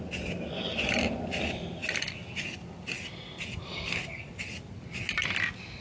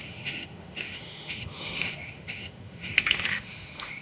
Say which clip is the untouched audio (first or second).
first